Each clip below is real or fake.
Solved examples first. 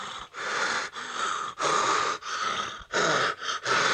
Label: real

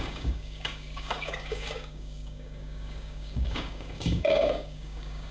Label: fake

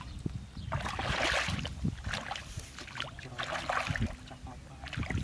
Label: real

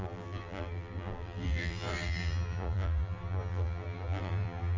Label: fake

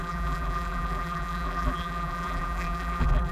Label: fake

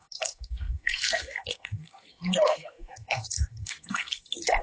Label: fake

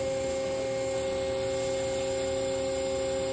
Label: real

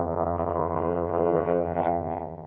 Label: fake